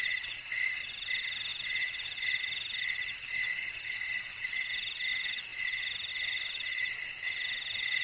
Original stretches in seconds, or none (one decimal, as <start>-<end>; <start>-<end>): 0.0-8.0